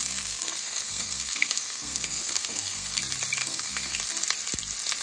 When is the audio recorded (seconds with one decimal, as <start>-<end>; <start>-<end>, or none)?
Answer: 3.0-3.4; 4.0-5.0